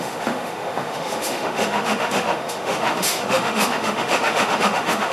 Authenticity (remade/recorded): remade